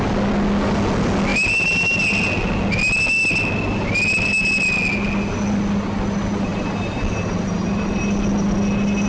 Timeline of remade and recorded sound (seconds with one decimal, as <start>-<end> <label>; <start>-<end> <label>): 0.0-9.1 recorded